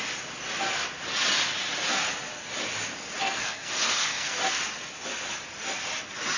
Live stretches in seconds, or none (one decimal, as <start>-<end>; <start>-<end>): 0.0-3.2; 4.6-6.4